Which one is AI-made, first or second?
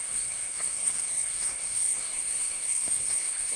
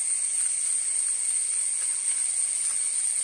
first